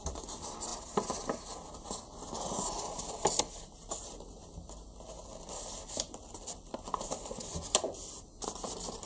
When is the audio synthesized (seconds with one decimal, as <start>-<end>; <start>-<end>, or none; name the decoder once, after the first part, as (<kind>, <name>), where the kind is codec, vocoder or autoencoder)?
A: none